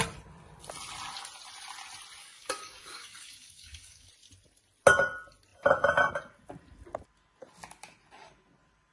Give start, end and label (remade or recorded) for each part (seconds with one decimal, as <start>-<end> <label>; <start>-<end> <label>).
0.0-2.2 recorded; 2.2-4.1 remade; 4.1-8.9 recorded